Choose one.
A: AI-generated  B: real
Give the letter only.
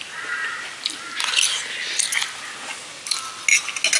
B